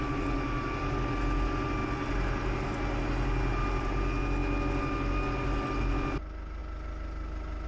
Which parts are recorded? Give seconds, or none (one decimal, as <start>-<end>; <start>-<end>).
0.0-7.7